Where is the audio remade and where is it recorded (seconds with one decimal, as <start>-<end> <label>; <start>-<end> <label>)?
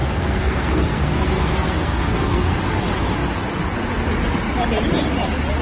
0.0-2.6 remade; 2.6-5.6 recorded